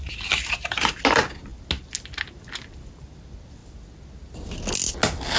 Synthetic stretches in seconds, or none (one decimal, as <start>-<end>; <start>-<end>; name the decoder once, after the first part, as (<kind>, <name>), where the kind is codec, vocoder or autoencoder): none